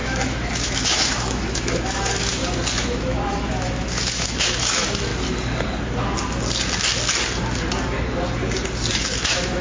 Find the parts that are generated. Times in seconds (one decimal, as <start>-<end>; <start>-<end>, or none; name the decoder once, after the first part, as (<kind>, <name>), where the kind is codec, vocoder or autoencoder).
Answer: 0.0-2.4 (autoencoder, DAC-VAE); 2.9-5.1; 8.9-9.6